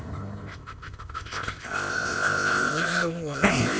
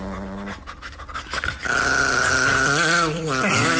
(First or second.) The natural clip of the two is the second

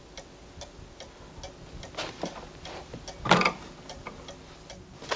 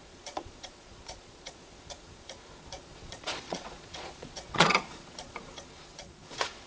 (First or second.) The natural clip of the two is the first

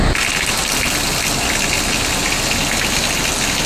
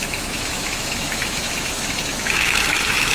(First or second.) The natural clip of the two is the first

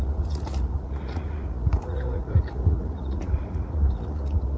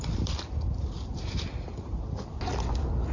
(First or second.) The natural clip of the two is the second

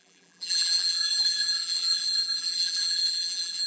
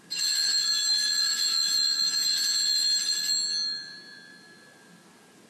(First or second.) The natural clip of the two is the second